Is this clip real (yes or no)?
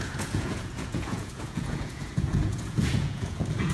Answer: no